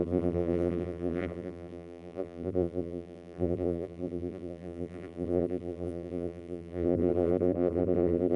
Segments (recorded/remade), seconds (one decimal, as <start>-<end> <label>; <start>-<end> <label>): 0.0-8.4 remade